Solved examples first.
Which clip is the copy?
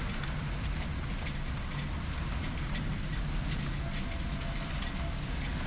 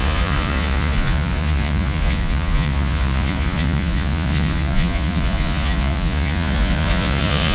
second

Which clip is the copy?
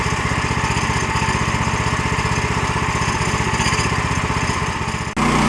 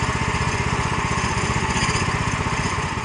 second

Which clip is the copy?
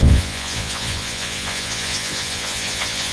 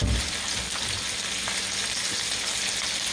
first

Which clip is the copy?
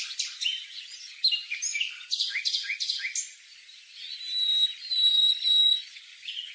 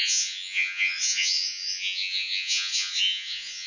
second